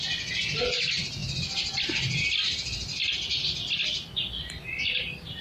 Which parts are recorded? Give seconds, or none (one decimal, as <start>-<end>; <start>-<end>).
0.0-5.4